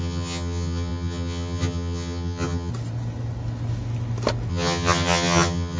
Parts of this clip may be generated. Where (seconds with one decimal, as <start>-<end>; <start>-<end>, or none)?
0.0-2.7; 4.5-5.8